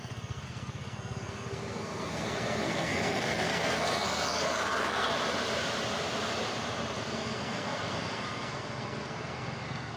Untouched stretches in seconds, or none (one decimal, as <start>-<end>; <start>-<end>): 5.1-7.0